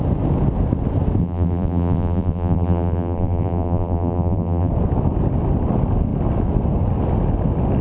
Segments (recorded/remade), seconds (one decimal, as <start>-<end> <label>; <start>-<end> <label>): 0.0-1.2 recorded; 1.2-4.7 remade; 4.7-7.8 recorded